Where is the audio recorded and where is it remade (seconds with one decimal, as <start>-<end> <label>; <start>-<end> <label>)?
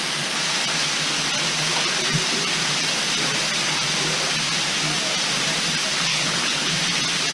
0.0-6.1 recorded; 6.1-6.7 remade; 6.7-7.3 recorded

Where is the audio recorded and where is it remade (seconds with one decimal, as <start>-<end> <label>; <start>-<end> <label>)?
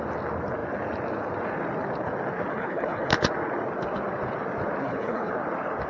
0.0-2.5 recorded; 2.5-3.1 remade; 3.1-4.8 recorded; 4.8-5.3 remade; 5.3-5.9 recorded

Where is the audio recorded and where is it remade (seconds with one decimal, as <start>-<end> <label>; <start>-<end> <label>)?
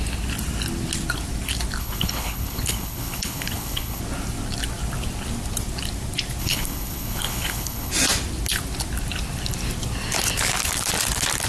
0.0-1.8 recorded; 1.8-4.0 remade; 4.0-6.4 recorded; 6.4-7.9 remade; 7.9-11.5 recorded